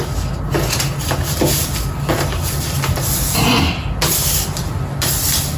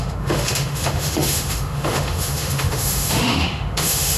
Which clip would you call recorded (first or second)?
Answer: first